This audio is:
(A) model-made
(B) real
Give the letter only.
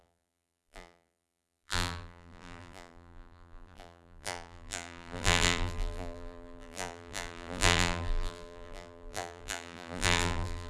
A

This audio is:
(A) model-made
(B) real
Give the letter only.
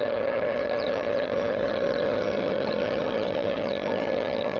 A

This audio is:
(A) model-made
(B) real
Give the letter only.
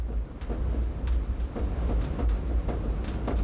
B